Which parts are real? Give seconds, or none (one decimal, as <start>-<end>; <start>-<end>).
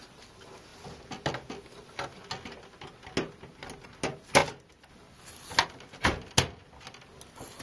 0.0-7.6